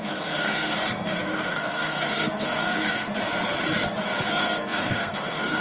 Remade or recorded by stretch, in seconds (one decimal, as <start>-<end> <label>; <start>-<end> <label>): 0.0-3.1 remade; 3.1-4.3 recorded; 4.3-5.6 remade